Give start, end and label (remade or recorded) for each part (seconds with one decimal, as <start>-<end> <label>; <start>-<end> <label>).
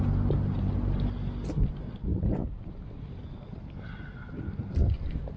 0.0-2.1 recorded; 2.1-4.6 remade; 4.6-5.4 recorded